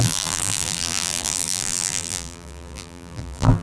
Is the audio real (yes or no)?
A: no